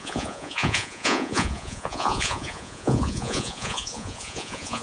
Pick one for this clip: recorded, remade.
remade